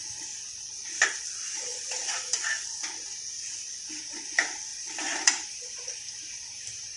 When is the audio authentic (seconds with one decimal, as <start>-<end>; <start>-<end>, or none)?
0.0-1.7; 2.4-4.7